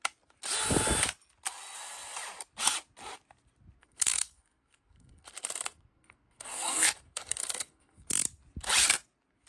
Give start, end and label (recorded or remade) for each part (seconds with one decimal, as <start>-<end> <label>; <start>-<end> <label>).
0.0-3.8 recorded; 3.8-8.1 remade; 8.1-9.5 recorded